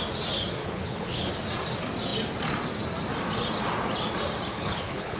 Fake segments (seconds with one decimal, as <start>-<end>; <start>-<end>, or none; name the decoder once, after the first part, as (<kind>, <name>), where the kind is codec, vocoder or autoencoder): 0.6-1.3 (codec, HILCodec); 4.5-5.2